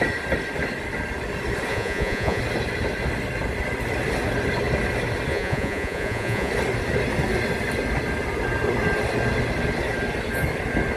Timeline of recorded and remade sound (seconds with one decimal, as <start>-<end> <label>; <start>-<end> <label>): 0.0-1.7 recorded; 1.7-2.4 remade; 2.4-5.3 recorded; 5.3-6.5 remade; 6.5-11.0 recorded